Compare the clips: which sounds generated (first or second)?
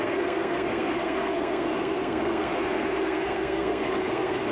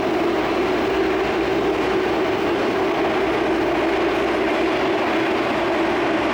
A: first